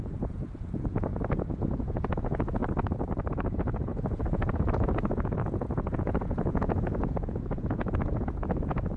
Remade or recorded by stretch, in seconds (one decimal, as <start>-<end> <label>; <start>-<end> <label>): 0.0-2.6 remade; 2.6-3.3 recorded; 3.3-9.0 remade